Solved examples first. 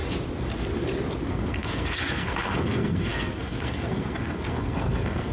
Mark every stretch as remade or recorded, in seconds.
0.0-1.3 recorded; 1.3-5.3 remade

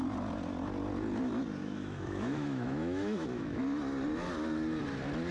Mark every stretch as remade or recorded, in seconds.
0.0-1.6 recorded; 1.6-3.6 remade; 3.6-5.3 recorded

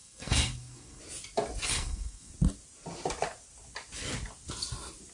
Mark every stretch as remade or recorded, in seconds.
0.0-1.0 remade; 1.0-1.7 recorded; 1.7-2.3 remade; 2.3-5.1 recorded

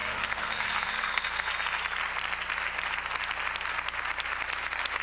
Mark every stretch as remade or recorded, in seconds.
0.0-1.5 remade; 1.5-5.0 recorded

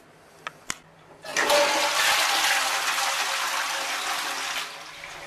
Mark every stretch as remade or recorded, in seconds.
0.0-5.3 recorded